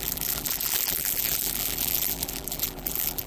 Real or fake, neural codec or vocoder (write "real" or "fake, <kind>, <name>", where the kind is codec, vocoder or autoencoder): fake, vocoder, BigVGAN v2